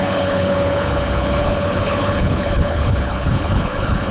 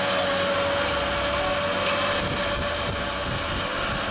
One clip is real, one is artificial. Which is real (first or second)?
second